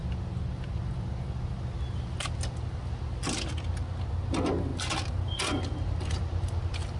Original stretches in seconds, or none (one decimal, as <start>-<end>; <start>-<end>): 0.0-7.0